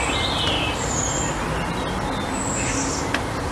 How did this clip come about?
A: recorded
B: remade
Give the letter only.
A